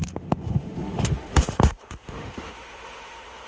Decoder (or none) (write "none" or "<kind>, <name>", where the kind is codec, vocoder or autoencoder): autoencoder, DAC-VAE